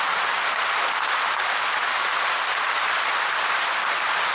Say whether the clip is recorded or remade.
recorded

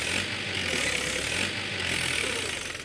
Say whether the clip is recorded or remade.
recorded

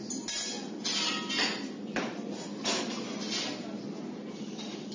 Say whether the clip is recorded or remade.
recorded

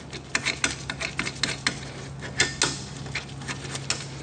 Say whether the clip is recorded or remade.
recorded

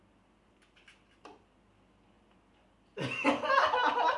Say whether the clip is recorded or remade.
recorded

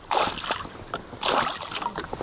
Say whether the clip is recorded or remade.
recorded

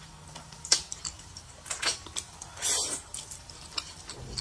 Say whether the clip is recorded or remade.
recorded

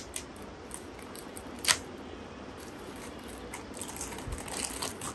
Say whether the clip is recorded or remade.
recorded